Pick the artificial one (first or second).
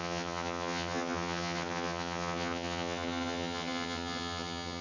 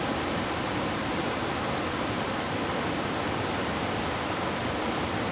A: first